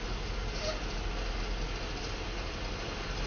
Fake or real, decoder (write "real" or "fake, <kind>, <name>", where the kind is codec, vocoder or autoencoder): real